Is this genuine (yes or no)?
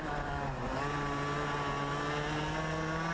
yes